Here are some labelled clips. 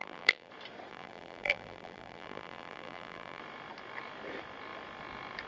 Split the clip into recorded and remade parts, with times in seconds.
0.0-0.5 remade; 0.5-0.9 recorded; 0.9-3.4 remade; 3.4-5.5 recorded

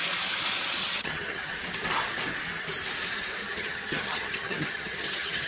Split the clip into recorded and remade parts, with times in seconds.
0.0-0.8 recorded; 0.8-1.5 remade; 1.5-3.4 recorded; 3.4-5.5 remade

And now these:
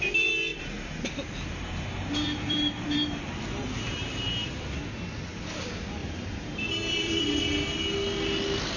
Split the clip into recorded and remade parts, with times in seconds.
0.0-0.5 recorded; 0.5-4.8 remade; 4.8-6.0 recorded; 6.0-7.4 remade; 7.4-8.8 recorded

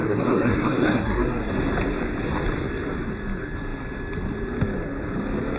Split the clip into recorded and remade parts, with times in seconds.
0.0-1.5 remade; 1.5-5.6 recorded

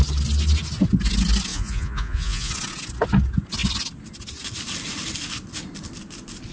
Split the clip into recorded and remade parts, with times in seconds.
0.0-1.5 recorded; 1.5-2.5 remade; 2.5-6.5 recorded